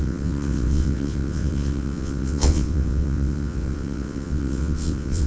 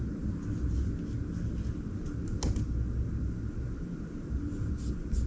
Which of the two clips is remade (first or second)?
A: first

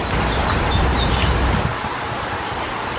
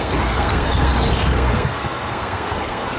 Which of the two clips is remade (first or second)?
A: second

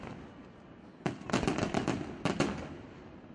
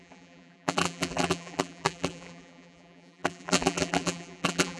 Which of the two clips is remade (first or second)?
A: second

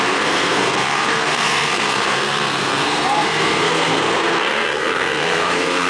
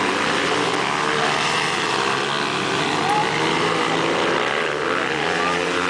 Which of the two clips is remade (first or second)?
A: first